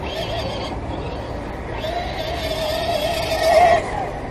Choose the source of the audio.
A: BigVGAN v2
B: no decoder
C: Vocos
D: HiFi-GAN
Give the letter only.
B